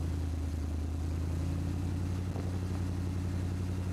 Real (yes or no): yes